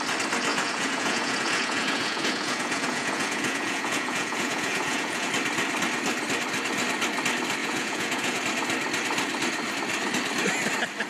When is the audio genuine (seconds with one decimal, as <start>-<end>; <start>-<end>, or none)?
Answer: 0.0-0.5; 5.3-7.6; 8.4-11.1